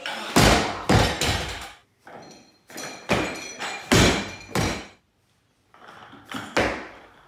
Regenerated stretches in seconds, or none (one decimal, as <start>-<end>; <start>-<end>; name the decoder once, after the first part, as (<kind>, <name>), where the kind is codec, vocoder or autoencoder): none